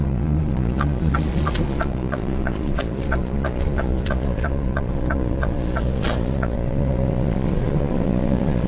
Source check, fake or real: fake